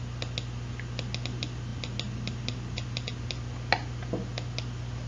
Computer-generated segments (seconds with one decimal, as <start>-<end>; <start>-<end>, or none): none